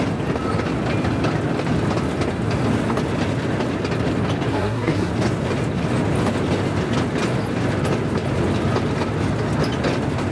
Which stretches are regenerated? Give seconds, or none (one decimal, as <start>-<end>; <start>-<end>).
4.5-5.1